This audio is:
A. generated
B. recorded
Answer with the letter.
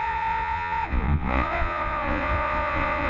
A